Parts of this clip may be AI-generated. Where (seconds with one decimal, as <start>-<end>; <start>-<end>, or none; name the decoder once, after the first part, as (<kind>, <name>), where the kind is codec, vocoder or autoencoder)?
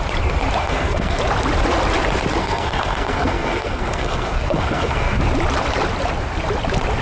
0.6-1.2 (codec, SNAC); 2.4-5.2